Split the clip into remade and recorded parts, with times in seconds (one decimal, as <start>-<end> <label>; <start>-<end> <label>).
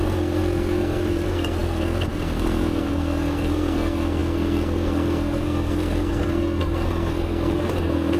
0.0-8.2 remade